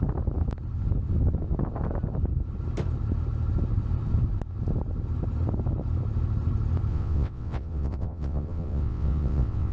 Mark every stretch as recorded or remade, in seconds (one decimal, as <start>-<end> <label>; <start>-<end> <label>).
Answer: 0.0-6.9 recorded; 6.9-9.7 remade